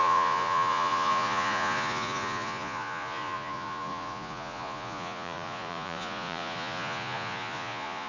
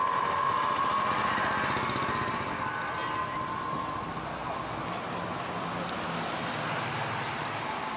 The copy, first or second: first